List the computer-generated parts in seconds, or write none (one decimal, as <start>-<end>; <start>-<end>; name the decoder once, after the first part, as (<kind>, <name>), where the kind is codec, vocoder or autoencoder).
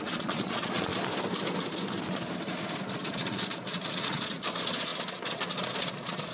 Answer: 0.0-0.9 (vocoder, Vocos); 2.9-6.3